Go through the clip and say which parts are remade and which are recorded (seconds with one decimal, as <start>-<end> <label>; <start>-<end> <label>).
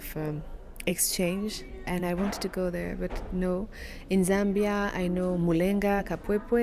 0.0-6.6 recorded